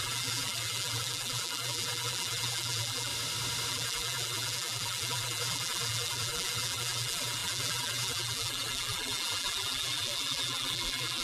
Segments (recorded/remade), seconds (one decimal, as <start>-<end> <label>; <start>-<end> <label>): 0.0-3.1 remade; 3.1-3.7 recorded; 3.7-11.2 remade